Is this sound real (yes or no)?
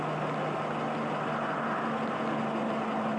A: yes